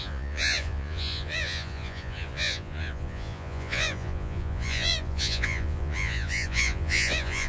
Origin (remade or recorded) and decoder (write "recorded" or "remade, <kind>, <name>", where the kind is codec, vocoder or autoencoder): remade, vocoder, Vocos